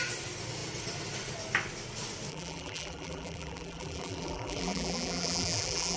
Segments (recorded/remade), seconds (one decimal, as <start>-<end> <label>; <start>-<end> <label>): 0.0-2.3 recorded; 2.3-6.0 remade